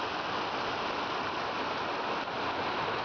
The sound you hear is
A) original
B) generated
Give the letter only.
A